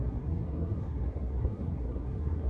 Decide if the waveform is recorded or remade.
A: remade